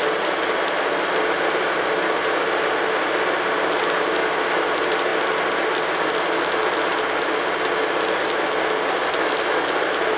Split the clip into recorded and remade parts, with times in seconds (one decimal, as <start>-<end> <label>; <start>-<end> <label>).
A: 0.0-10.2 recorded